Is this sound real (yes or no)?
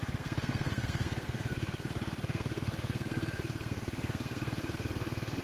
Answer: no